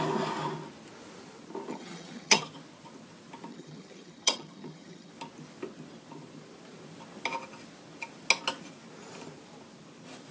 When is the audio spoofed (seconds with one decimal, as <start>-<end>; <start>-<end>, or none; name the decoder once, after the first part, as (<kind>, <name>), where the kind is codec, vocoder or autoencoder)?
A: 1.7-2.4 (vocoder, HiFi-GAN); 3.5-5.1